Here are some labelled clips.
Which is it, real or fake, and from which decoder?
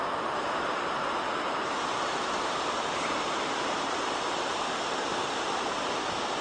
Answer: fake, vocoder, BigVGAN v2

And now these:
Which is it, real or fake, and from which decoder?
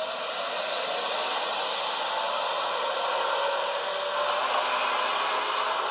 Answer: real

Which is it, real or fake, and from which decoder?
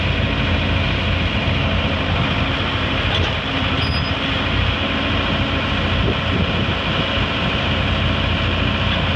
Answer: real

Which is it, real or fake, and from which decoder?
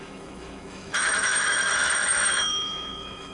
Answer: fake, autoencoder, DAC-VAE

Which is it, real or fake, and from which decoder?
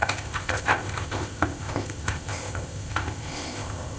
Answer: fake, codec, ZipCodec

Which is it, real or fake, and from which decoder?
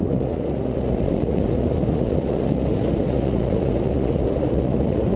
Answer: fake, vocoder, Vocos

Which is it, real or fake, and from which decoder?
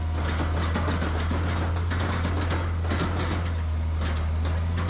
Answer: real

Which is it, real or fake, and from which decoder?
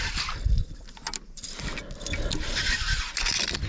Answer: real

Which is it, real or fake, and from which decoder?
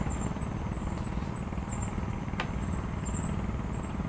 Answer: real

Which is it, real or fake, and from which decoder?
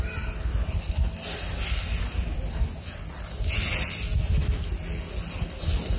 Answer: real